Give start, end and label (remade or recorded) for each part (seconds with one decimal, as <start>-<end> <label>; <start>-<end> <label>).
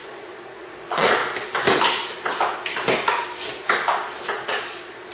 0.0-1.2 remade; 1.2-4.3 recorded; 4.3-5.1 remade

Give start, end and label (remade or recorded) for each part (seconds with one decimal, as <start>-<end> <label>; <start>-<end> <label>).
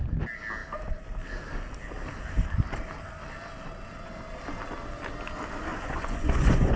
0.0-5.7 recorded; 5.7-6.8 remade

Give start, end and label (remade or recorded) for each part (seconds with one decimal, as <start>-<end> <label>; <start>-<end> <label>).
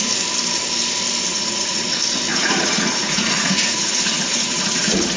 0.0-1.3 recorded; 1.3-1.9 remade; 1.9-2.3 recorded; 2.3-5.2 remade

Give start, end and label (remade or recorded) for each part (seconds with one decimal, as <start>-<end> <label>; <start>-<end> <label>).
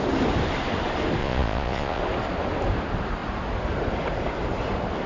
0.0-1.2 recorded; 1.2-2.0 remade; 2.0-5.1 recorded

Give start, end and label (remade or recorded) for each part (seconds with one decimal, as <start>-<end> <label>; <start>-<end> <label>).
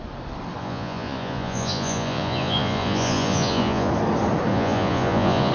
0.0-0.6 recorded; 0.6-3.9 remade; 3.9-4.5 recorded; 4.5-5.5 remade